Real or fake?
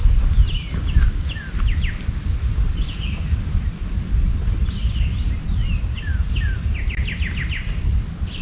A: real